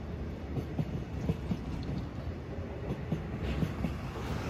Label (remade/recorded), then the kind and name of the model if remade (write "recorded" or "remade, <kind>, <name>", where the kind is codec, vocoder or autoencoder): recorded